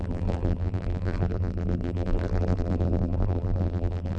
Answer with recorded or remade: remade